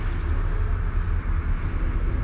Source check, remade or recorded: recorded